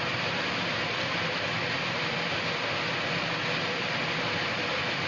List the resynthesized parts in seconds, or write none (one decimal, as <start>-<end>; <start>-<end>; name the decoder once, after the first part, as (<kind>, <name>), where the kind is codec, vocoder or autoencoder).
none